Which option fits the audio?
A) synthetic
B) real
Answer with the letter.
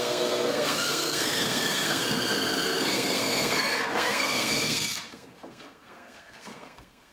A